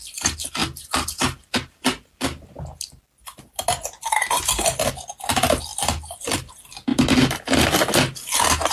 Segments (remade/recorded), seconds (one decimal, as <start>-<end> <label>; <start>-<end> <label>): 0.0-8.7 recorded